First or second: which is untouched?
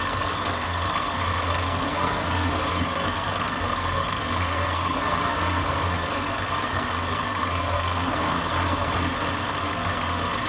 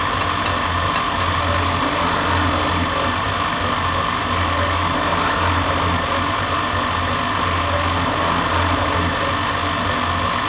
second